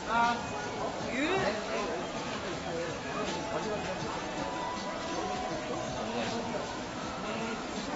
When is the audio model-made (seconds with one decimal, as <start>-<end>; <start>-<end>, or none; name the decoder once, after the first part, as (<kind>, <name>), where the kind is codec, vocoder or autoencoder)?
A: 1.4-3.4 (autoencoder, DAC-VAE); 6.1-7.6